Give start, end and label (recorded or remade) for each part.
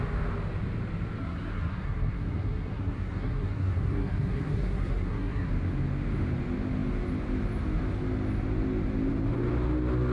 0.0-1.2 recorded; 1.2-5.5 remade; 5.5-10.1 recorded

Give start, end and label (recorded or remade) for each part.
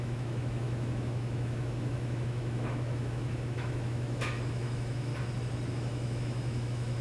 0.0-5.1 remade; 5.1-5.7 recorded; 5.7-7.0 remade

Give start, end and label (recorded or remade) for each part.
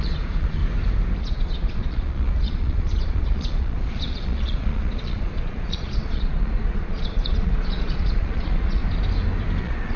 0.0-0.6 remade; 0.6-1.2 recorded; 1.2-8.8 remade; 8.8-9.6 recorded; 9.6-10.0 remade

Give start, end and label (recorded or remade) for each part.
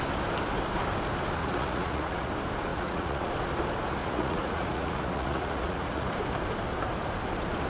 0.0-1.4 recorded; 1.4-2.3 remade; 2.3-2.7 recorded; 2.7-3.3 remade; 3.3-4.0 recorded; 4.0-6.1 remade; 6.1-7.7 recorded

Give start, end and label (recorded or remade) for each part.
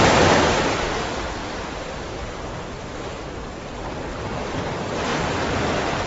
0.0-1.4 recorded; 1.4-4.6 remade; 4.6-6.1 recorded